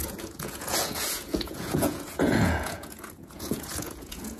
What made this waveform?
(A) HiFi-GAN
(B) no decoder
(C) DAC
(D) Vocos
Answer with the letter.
D